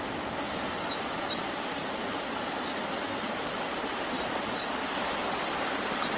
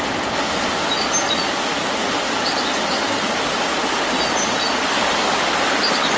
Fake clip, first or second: first